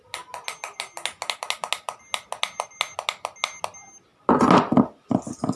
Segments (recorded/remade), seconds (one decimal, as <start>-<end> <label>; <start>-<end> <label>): 0.0-5.6 recorded